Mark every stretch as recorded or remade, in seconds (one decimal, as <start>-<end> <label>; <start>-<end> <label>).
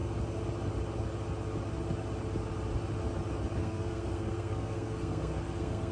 0.0-3.6 recorded; 3.6-5.9 remade